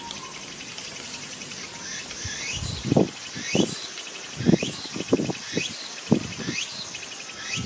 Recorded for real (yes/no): yes